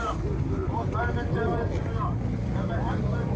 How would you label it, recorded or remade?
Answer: recorded